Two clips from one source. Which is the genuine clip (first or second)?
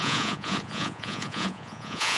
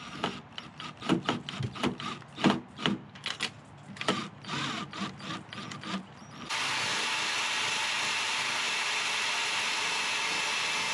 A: second